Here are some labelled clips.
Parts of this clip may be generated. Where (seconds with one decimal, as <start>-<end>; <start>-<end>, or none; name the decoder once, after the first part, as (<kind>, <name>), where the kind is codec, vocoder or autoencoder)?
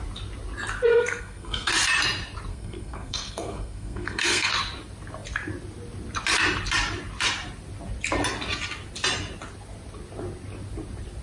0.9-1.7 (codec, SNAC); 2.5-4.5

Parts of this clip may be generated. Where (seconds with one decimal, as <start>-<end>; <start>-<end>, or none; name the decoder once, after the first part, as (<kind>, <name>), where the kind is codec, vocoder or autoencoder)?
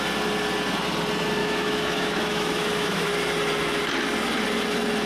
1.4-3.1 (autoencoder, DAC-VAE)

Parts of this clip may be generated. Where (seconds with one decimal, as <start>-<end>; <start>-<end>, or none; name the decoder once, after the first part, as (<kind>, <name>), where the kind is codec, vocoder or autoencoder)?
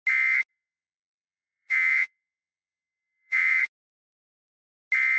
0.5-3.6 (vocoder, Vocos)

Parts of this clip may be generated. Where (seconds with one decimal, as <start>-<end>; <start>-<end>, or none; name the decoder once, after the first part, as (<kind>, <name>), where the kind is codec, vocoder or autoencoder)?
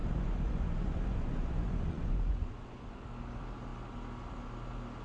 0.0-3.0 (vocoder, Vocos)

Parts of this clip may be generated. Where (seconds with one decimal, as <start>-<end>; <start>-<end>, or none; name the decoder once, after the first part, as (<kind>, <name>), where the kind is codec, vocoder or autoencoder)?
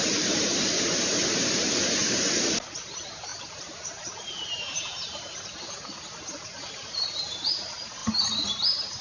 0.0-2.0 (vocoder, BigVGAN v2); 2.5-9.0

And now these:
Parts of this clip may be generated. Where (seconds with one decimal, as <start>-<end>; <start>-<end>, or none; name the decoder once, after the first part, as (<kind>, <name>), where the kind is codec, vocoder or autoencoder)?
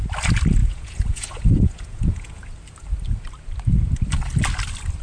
0.6-2.4 (vocoder, Vocos)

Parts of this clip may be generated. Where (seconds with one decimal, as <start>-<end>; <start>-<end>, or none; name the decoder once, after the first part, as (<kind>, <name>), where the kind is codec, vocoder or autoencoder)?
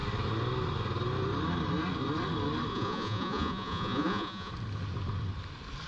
2.7-4.5 (vocoder, Vocos)